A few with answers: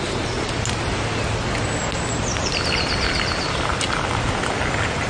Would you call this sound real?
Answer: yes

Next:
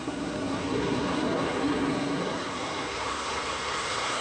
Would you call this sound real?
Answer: no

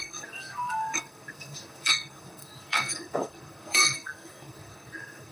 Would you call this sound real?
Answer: no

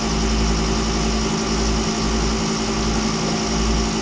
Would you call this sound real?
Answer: yes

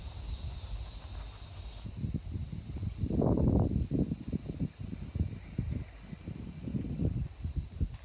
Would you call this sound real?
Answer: yes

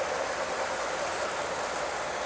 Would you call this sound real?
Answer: yes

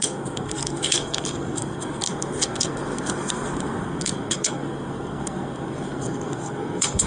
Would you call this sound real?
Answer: no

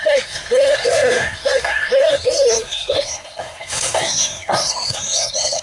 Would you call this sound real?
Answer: no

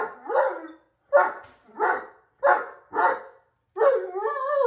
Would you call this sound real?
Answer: yes